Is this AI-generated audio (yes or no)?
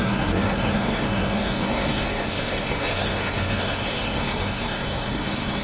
yes